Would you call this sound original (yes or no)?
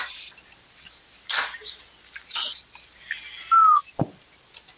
yes